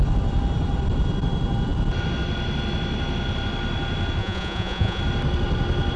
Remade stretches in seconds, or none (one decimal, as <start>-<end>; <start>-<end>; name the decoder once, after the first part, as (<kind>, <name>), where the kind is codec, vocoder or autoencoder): 4.2-5.0 (vocoder, Vocos)